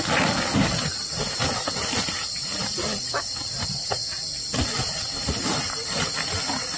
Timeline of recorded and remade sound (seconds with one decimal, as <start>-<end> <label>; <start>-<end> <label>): 0.0-0.5 recorded; 0.5-1.3 remade; 1.3-6.8 recorded